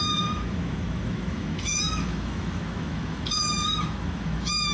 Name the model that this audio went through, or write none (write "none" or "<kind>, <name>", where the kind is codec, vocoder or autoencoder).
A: autoencoder, DAC-VAE